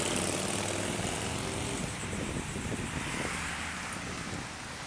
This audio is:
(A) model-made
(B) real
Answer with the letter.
B